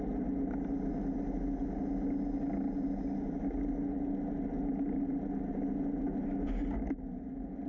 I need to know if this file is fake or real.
real